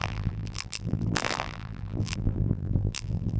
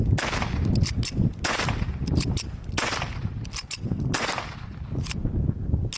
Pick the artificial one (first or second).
first